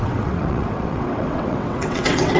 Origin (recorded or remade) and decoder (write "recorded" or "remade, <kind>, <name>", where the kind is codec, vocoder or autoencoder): remade, vocoder, WaveNeXt